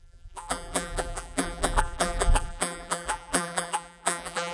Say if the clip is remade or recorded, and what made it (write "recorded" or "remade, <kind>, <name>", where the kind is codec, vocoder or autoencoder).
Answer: remade, vocoder, BigVGAN v2